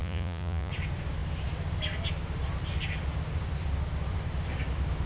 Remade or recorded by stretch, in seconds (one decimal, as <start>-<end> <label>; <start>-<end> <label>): 0.0-0.7 remade; 0.7-5.1 recorded